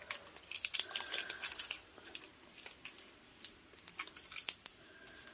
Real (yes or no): yes